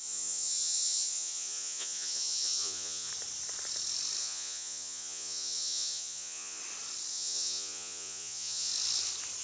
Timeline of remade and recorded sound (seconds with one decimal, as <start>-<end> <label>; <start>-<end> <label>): 0.0-3.1 remade; 3.1-4.2 recorded; 4.2-6.6 remade; 6.6-7.1 recorded; 7.1-8.7 remade; 8.7-9.4 recorded